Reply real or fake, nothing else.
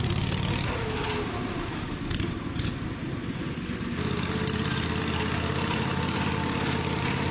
real